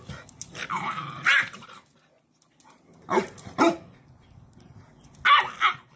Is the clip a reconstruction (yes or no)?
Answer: no